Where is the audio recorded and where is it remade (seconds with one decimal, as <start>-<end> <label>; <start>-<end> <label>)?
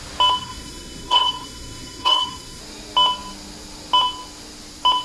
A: 0.0-0.4 recorded; 0.4-2.6 remade; 2.6-5.0 recorded